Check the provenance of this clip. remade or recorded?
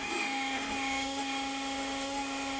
remade